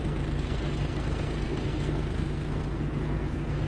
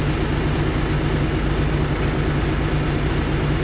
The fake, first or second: first